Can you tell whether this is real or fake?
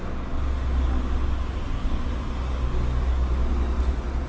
real